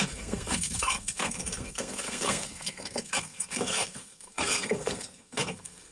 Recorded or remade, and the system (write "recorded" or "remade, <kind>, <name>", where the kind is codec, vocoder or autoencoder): remade, codec, SNAC